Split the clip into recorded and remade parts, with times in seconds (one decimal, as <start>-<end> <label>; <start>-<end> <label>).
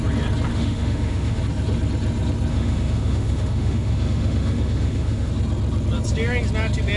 0.0-0.5 recorded; 0.5-1.4 remade; 1.4-2.5 recorded; 2.5-5.3 remade; 5.3-7.0 recorded